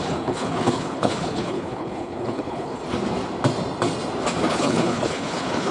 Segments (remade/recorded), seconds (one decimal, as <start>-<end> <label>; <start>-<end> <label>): 0.0-2.8 remade; 2.8-4.5 recorded; 4.5-5.7 remade